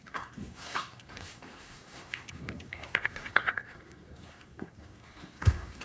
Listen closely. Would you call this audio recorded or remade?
remade